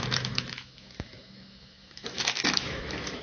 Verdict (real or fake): fake